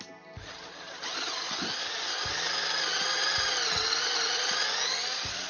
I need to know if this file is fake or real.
real